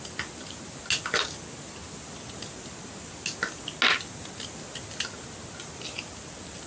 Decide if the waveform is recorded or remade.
recorded